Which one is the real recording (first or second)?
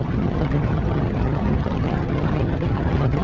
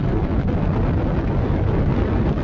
second